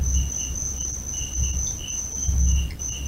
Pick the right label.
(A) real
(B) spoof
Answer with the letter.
A